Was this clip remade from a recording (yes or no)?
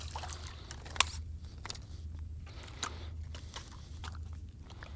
no